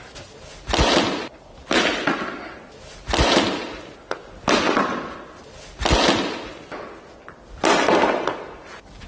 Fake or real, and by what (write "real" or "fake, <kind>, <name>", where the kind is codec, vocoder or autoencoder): real